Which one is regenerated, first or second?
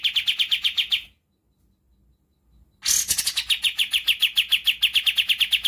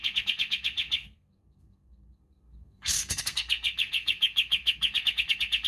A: second